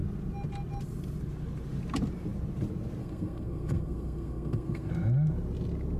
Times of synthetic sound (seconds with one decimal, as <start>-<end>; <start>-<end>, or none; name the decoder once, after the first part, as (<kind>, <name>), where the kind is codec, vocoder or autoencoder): 3.0-4.9 (codec, SNAC)